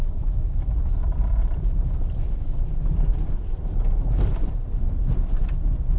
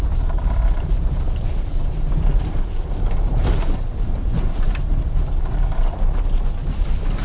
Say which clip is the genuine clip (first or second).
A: first